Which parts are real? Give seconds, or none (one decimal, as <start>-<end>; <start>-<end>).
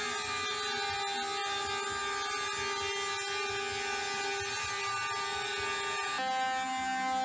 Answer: 0.0-7.2